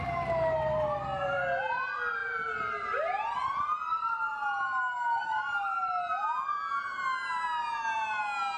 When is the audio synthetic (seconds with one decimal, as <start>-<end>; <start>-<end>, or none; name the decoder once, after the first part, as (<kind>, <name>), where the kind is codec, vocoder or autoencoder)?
none